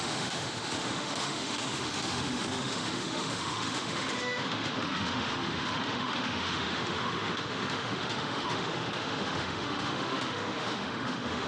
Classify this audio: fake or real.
fake